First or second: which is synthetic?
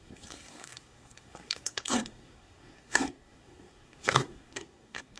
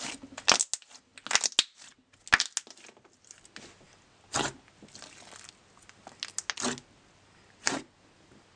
first